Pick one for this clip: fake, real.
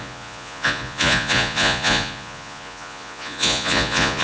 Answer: fake